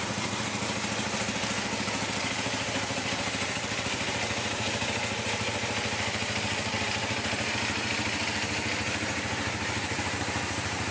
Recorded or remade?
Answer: remade